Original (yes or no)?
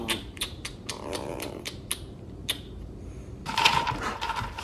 no